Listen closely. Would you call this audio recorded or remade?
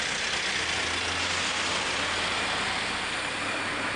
recorded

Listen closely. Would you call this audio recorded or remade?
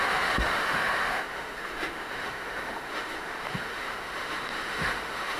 remade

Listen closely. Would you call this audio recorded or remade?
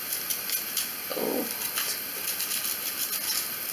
recorded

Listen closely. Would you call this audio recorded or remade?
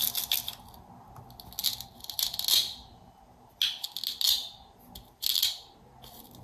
recorded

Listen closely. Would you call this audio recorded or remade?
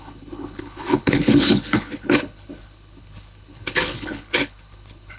remade